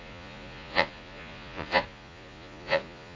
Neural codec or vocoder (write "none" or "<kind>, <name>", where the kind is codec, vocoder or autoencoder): vocoder, Vocos